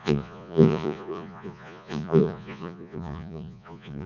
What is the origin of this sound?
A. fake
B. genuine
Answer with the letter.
A